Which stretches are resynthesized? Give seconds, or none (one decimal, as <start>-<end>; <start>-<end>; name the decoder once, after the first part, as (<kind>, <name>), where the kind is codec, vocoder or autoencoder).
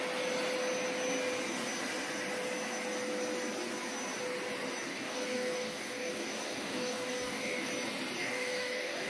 4.9-7.7 (codec, DAC); 8.2-9.1